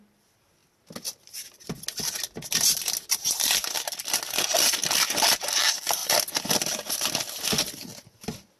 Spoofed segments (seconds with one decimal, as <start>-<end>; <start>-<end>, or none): none